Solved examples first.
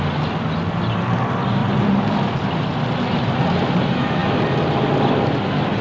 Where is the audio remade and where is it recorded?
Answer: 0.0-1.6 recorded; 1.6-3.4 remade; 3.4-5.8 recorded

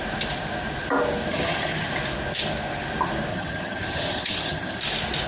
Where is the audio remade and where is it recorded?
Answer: 0.0-1.3 recorded; 1.3-1.9 remade; 1.9-3.3 recorded; 3.3-4.8 remade; 4.8-5.3 recorded

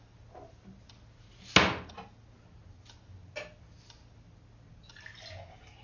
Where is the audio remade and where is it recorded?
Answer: 0.0-5.8 recorded

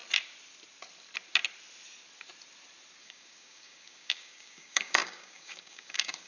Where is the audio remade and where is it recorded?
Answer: 0.0-3.0 recorded; 3.0-6.3 remade